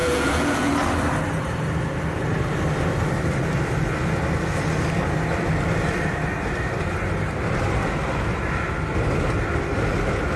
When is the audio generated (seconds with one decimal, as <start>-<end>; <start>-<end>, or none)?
0.0-0.7